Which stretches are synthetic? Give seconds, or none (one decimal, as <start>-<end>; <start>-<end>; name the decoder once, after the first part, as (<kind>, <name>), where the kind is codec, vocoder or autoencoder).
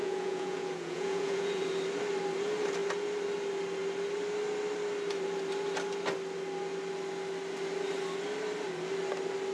0.0-1.6 (vocoder, Vocos)